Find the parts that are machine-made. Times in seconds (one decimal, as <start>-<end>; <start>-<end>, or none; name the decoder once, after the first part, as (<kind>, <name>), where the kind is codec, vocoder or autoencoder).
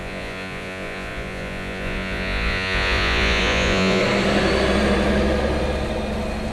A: 0.0-4.0 (vocoder, Vocos)